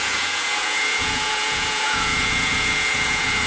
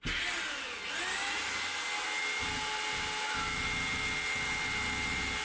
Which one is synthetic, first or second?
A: first